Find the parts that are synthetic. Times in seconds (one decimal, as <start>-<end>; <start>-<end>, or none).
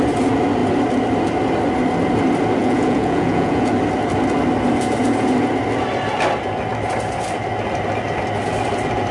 2.6-3.7